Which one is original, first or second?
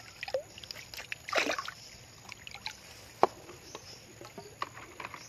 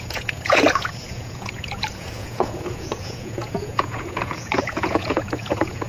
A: first